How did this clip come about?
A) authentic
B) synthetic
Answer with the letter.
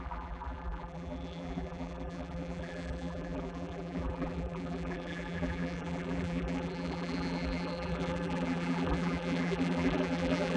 B